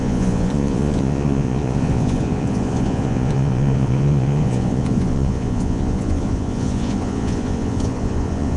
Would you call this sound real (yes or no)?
no